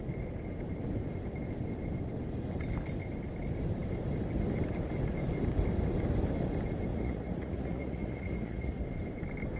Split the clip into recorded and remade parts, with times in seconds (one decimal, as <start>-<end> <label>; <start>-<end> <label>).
0.0-6.9 recorded; 6.9-8.7 remade; 8.7-9.6 recorded